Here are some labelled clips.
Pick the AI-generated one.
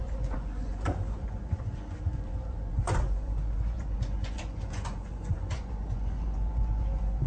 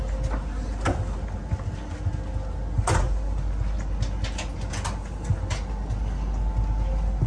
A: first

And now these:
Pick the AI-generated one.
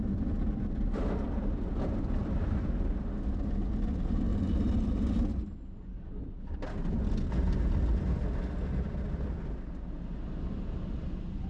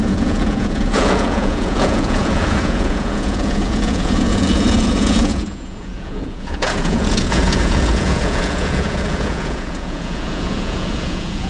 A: second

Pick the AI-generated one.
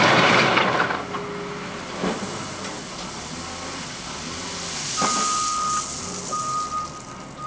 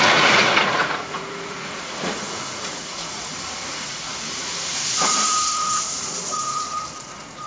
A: second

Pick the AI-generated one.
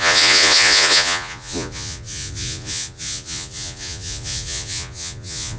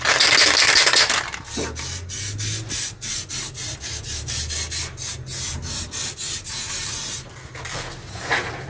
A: first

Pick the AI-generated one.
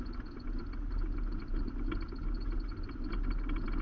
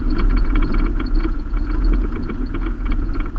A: second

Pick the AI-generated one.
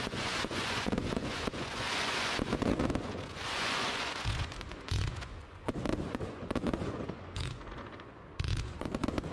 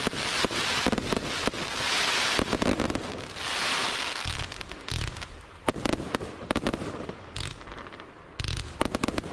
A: first